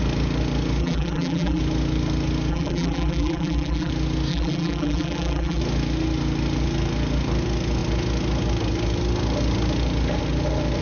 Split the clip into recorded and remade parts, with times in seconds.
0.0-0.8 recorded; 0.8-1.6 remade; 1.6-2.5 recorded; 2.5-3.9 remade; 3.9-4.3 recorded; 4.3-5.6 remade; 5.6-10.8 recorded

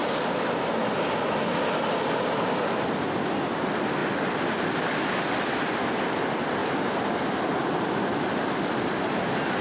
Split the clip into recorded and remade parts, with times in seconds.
0.0-9.6 recorded

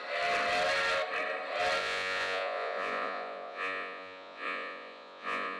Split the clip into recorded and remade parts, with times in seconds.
0.0-1.8 recorded; 1.8-5.6 remade

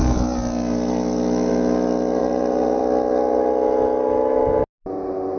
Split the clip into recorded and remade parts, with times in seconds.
0.0-2.2 recorded; 2.2-2.8 remade; 2.8-5.4 recorded